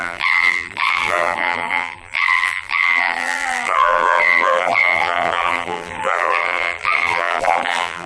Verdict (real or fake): fake